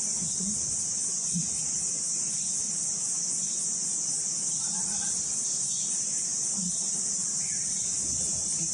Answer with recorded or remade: recorded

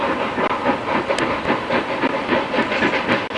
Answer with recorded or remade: recorded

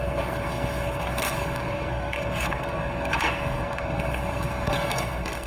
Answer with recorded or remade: remade